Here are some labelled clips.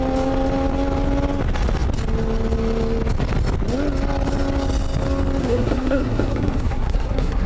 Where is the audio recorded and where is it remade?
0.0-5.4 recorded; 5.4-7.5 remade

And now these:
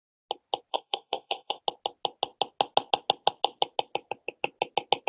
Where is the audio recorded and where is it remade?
0.0-0.7 recorded; 0.7-1.6 remade; 1.6-5.1 recorded

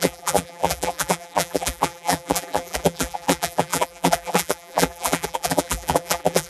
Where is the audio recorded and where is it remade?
0.0-6.5 remade

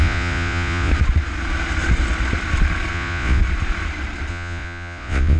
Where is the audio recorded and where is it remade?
0.0-0.9 remade; 0.9-2.9 recorded; 2.9-3.4 remade; 3.4-4.3 recorded; 4.3-5.4 remade